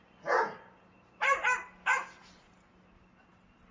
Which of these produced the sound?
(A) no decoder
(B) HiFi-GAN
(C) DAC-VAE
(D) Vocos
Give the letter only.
A